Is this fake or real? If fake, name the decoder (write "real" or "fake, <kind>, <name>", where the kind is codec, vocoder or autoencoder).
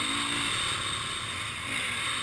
real